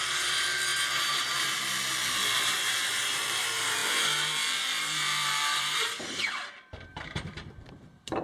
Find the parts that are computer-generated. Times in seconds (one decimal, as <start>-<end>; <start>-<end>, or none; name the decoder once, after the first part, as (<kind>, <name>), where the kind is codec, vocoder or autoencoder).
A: 0.0-0.7 (vocoder, BigVGAN v2); 1.2-8.2